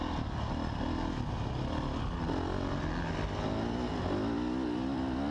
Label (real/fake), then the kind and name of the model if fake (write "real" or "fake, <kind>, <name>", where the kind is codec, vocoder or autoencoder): real